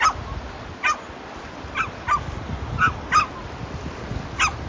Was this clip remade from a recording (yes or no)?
no